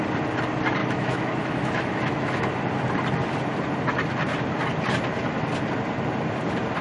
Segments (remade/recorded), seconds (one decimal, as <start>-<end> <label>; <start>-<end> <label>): 0.0-0.8 recorded; 0.8-2.4 remade; 2.4-6.8 recorded